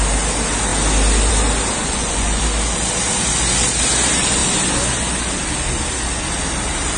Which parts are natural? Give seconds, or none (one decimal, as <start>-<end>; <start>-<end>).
0.0-1.8; 2.4-7.0